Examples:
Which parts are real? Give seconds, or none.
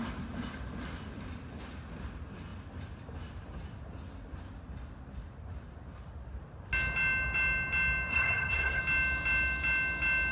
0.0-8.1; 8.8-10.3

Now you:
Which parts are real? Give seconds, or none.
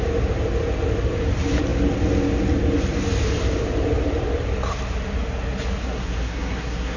0.0-5.8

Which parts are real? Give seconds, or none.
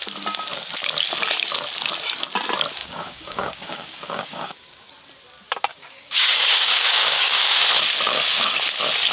0.0-2.8; 4.9-5.7; 7.6-8.1; 8.6-9.1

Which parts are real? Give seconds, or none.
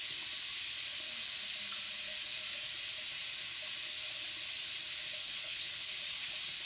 0.0-5.2; 5.9-6.7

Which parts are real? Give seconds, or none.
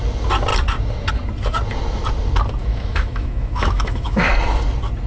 0.0-2.6; 4.3-5.1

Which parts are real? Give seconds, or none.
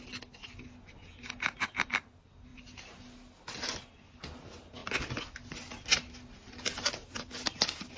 0.0-8.0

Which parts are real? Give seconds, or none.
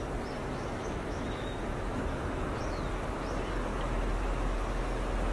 0.0-0.4; 2.8-3.7; 4.8-5.3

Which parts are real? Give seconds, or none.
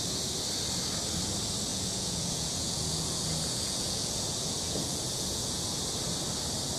0.0-1.7; 5.8-6.8